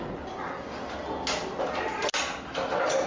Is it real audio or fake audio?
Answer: real